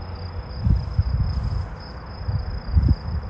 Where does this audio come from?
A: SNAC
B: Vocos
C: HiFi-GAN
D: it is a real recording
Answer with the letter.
D